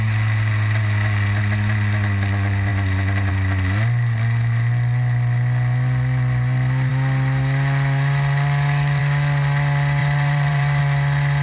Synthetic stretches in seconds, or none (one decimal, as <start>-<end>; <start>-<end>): 10.0-10.8